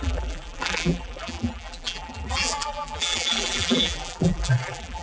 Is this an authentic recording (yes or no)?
no